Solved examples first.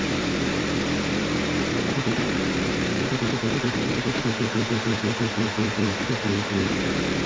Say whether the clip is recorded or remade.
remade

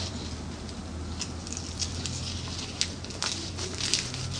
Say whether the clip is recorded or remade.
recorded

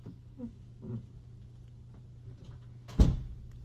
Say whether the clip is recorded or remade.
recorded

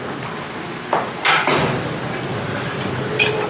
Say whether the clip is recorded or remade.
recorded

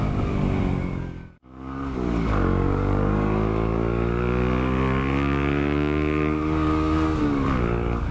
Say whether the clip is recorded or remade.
remade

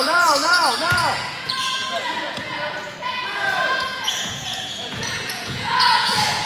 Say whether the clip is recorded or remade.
remade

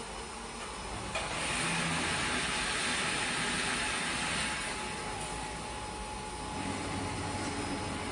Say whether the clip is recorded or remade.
recorded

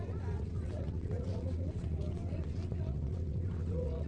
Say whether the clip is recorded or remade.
remade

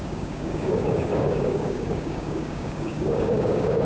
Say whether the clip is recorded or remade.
remade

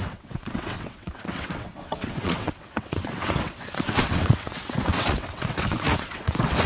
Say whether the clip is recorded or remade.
remade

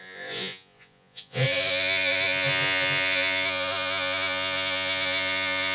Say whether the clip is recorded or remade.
remade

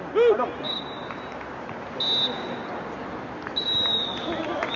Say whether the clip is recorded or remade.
recorded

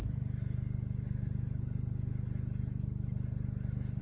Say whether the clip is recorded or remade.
recorded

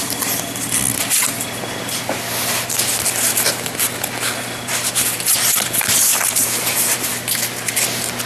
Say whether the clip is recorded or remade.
recorded